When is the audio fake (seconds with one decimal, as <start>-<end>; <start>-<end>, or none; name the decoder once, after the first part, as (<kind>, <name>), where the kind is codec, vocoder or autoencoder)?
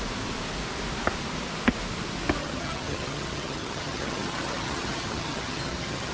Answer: 2.4-6.1 (vocoder, HiFi-GAN)